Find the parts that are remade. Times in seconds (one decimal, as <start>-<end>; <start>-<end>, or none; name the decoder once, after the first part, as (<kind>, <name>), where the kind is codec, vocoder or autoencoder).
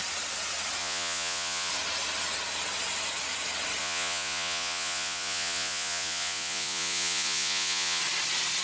0.8-1.7 (vocoder, Vocos); 3.8-8.0